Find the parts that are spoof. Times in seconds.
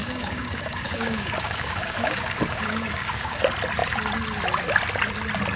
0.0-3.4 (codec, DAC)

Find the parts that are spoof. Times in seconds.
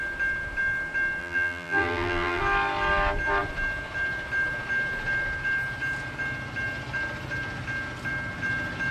1.2-2.4 (vocoder, BigVGAN v2)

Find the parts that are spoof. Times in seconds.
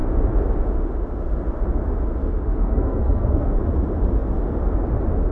2.2-3.6 (codec, SNAC)